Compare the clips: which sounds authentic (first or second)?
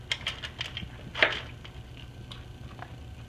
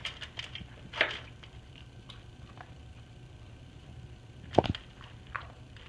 first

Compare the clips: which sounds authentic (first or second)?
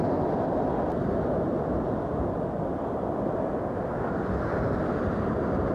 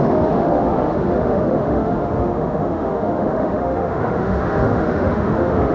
first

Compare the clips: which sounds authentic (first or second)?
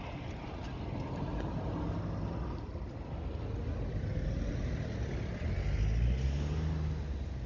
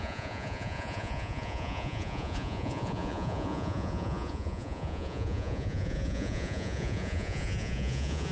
first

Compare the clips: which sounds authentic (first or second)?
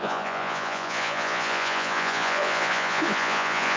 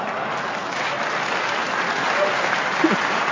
second